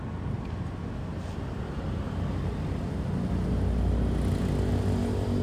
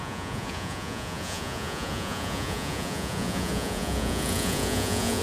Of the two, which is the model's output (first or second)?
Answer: second